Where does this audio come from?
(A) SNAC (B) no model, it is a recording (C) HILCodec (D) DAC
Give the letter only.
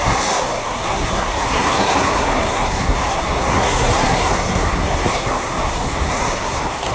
A